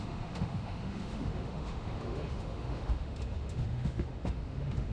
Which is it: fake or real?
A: fake